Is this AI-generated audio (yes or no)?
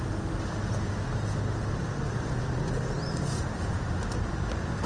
no